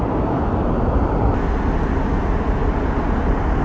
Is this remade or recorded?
recorded